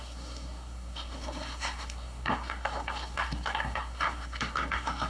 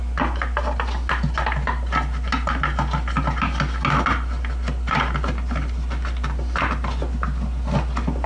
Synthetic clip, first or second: first